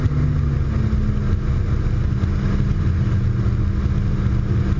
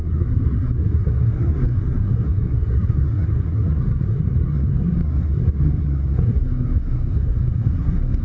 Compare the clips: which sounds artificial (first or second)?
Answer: second